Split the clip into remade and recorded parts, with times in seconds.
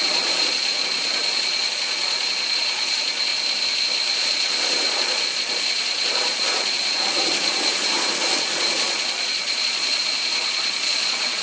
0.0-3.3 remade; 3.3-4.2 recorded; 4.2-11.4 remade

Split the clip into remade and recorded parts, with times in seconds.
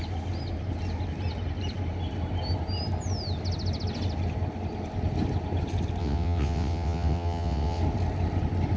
0.0-6.0 recorded; 6.0-7.8 remade; 7.8-8.8 recorded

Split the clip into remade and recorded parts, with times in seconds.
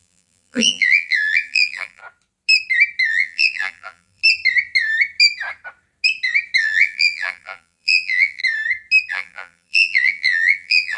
0.0-2.0 remade; 2.0-3.1 recorded; 3.1-4.2 remade; 4.2-6.6 recorded; 6.6-8.4 remade; 8.4-9.1 recorded; 9.1-11.0 remade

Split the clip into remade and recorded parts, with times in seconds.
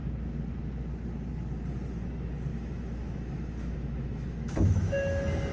0.0-2.5 recorded; 2.5-4.9 remade; 4.9-5.5 recorded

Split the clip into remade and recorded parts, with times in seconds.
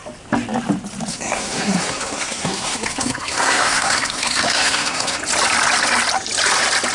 0.0-1.1 recorded; 1.1-5.2 remade; 5.2-6.9 recorded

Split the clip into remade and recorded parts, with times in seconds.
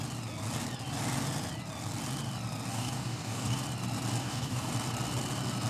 0.0-2.7 recorded; 2.7-3.6 remade; 3.6-4.2 recorded; 4.2-4.7 remade; 4.7-5.7 recorded